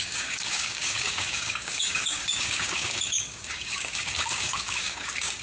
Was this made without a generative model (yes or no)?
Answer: no